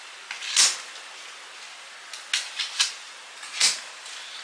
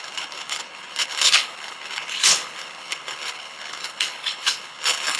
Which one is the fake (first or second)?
second